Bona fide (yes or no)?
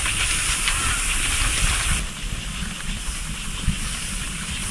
yes